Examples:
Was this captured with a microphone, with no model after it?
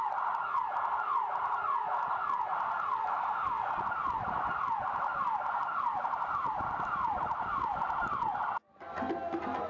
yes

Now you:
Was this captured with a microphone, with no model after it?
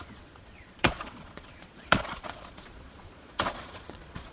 no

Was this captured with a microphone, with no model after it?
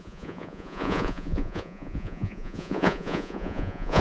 no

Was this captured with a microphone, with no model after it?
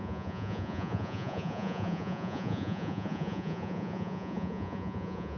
no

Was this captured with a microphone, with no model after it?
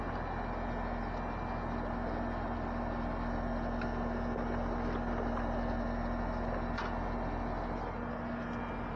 yes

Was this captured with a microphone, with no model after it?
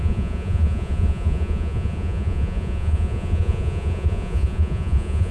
no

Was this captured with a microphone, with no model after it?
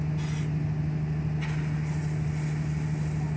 yes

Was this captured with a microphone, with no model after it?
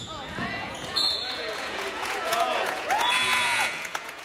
no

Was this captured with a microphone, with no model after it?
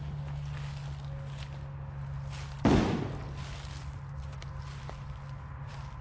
yes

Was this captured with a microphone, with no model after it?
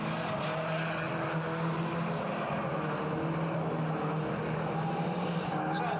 yes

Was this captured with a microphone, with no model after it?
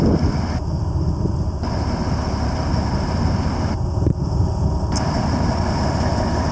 yes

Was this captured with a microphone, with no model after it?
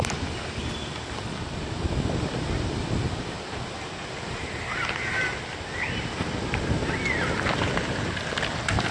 yes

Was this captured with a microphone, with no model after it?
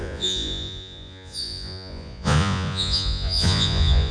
no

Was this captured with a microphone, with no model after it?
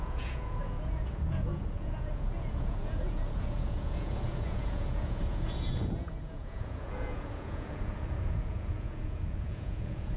no